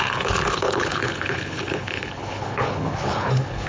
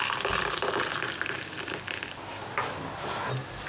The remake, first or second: first